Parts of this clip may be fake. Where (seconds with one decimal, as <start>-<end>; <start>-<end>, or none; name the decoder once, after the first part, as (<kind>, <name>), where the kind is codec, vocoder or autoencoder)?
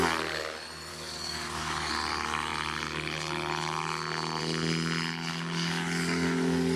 0.9-1.9 (codec, DAC); 5.3-6.8